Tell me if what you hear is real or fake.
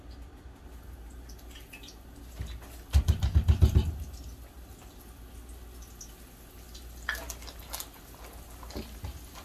real